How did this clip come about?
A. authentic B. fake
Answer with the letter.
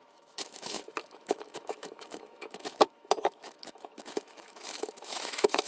B